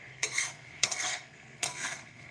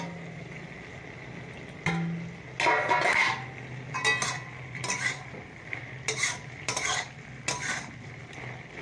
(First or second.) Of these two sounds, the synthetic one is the first